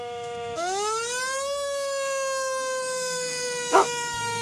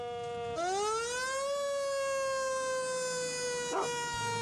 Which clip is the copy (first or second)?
first